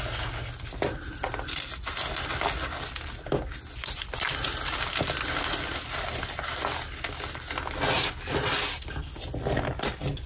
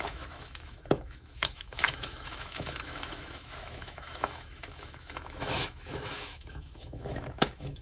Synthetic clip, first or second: second